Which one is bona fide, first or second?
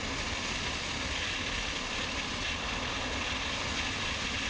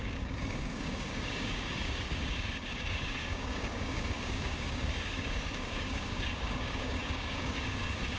first